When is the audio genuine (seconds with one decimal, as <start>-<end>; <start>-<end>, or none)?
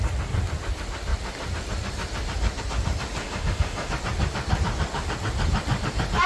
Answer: 0.0-3.2; 3.9-6.3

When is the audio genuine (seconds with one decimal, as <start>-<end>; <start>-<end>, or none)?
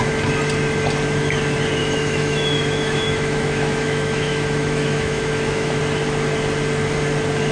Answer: 0.0-1.8; 5.8-7.5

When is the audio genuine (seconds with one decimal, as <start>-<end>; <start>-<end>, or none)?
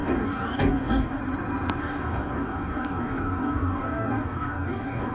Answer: 1.2-1.8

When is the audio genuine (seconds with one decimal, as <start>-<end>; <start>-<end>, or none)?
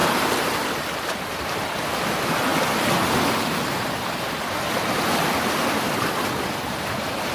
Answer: 0.0-7.3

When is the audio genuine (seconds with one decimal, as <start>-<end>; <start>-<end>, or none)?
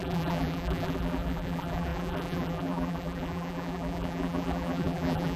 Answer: none